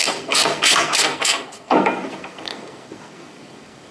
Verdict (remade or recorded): remade